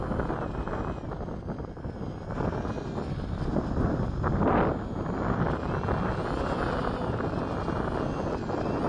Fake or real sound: real